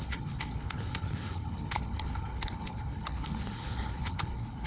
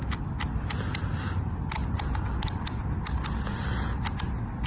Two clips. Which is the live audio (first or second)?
second